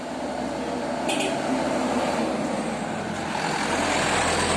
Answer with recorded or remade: recorded